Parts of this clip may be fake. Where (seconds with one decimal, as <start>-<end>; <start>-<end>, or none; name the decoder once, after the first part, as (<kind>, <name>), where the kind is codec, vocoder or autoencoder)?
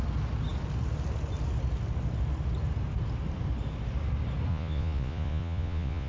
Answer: 4.5-6.1 (vocoder, Vocos)